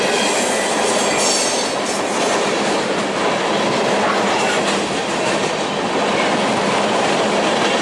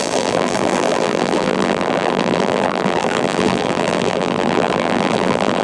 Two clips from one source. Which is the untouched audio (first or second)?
first